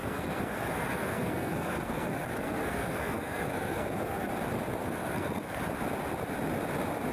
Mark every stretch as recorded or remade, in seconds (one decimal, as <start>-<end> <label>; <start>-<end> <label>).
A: 0.0-4.3 remade; 4.3-4.8 recorded; 4.8-5.6 remade; 5.6-7.1 recorded